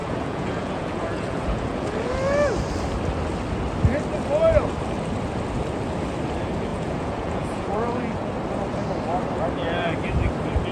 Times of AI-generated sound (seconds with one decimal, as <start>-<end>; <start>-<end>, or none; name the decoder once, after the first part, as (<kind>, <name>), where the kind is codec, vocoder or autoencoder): 0.0-2.1 (vocoder, Vocos); 6.7-8.3